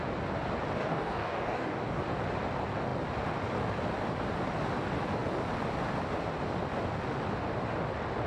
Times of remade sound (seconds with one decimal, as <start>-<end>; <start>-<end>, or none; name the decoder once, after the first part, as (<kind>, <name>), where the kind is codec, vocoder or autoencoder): 0.8-2.0 (codec, DAC)